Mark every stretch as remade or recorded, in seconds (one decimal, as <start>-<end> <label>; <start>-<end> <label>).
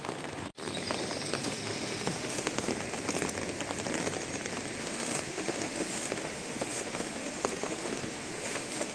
0.0-0.5 remade; 0.5-1.4 recorded; 1.4-2.7 remade; 2.7-4.8 recorded; 4.8-8.9 remade